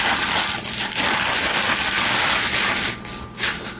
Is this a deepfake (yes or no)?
no